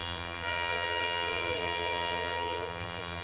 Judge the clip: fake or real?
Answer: fake